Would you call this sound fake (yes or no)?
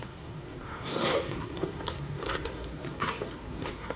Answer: yes